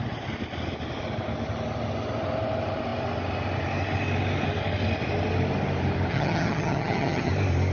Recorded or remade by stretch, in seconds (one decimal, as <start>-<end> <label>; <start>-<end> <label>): 0.0-6.1 recorded; 6.1-7.3 remade; 7.3-7.7 recorded